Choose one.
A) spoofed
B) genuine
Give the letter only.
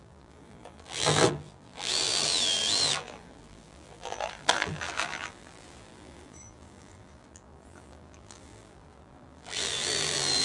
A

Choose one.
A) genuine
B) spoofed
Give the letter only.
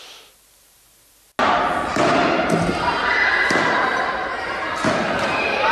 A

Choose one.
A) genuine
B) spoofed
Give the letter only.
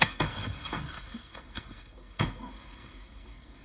B